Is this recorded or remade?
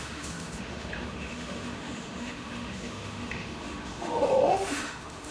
remade